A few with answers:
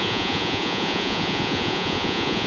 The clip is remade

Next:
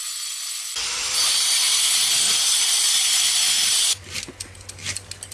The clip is recorded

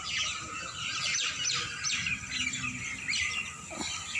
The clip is recorded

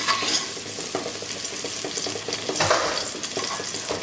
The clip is recorded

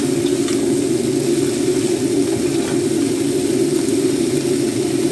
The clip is recorded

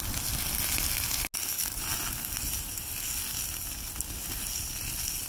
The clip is recorded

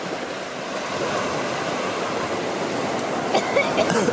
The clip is recorded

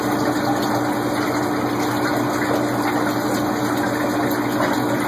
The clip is recorded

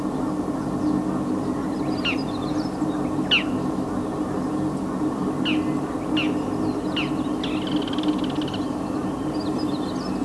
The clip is recorded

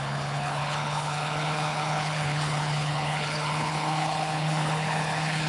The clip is remade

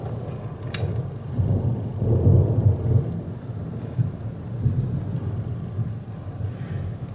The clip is recorded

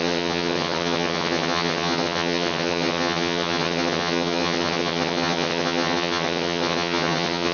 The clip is remade